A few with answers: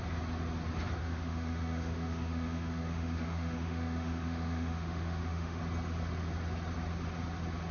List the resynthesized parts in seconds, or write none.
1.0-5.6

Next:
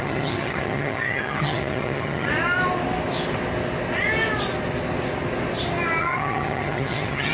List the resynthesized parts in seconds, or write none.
0.0-2.3; 6.0-7.3

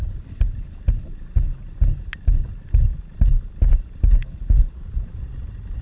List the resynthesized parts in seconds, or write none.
none

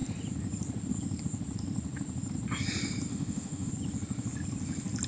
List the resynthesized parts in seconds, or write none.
3.1-3.7

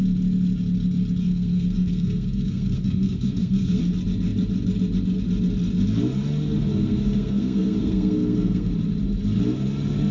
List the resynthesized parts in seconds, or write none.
1.2-3.8; 6.7-8.7

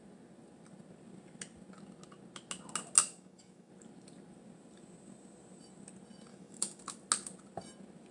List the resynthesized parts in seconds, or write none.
3.0-3.7; 6.3-6.8

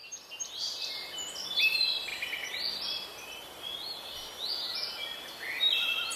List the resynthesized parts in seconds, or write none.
none